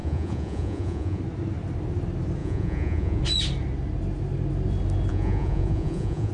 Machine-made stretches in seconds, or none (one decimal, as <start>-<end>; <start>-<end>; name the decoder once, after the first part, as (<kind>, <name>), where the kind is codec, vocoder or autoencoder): 0.0-1.2 (vocoder, Vocos); 2.4-3.2; 5.1-6.3